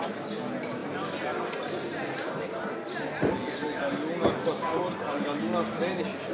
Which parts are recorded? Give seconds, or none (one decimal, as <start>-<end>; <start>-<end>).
0.0-6.3